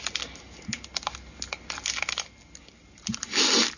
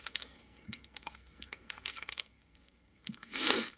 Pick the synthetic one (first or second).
second